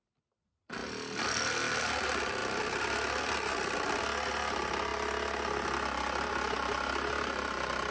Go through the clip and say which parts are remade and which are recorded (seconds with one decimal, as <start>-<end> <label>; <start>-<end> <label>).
0.0-7.9 recorded